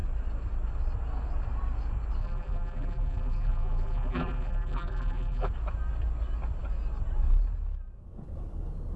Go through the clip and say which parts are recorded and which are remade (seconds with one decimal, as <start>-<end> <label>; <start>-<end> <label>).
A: 0.0-2.2 recorded; 2.2-5.5 remade; 5.5-9.0 recorded